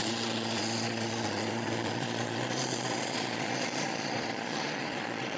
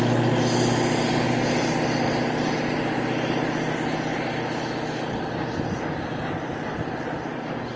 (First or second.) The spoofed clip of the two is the first